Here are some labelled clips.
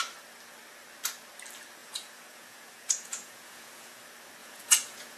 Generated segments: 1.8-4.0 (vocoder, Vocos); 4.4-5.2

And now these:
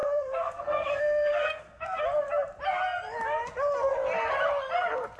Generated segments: 0.0-2.0 (codec, SNAC)

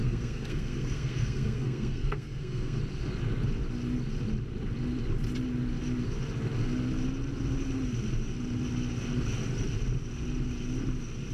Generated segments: 0.0-2.8 (codec, SNAC)

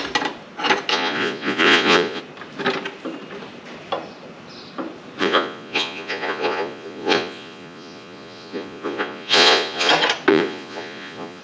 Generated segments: 0.9-2.2 (vocoder, Vocos); 5.2-9.9; 10.3-11.4

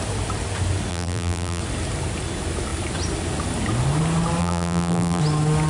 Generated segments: 0.9-1.6 (vocoder, BigVGAN v2); 4.4-5.2

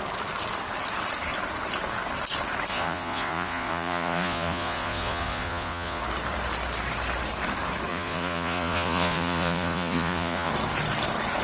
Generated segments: 2.7-6.0 (vocoder, Vocos); 7.9-10.5

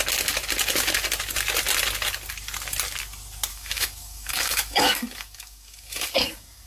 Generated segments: 3.5-6.7 (codec, DAC)